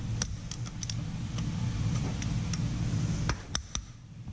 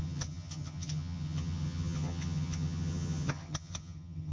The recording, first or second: first